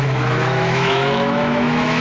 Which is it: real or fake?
fake